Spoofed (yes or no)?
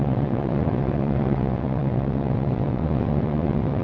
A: yes